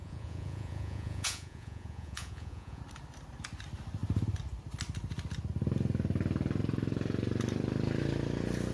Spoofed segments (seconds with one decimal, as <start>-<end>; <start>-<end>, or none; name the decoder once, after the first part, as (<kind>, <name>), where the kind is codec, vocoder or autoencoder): 0.0-2.8 (vocoder, Vocos)